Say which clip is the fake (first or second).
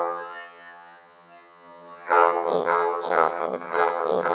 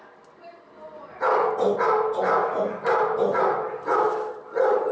first